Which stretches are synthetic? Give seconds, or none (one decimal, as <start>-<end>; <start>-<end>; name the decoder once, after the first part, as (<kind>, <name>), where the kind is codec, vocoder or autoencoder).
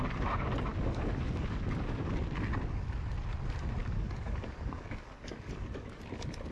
0.7-2.1 (codec, DAC); 3.8-6.0